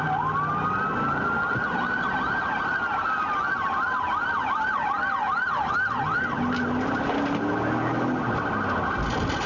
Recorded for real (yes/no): yes